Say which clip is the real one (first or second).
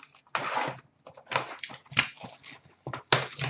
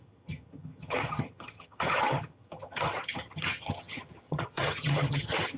first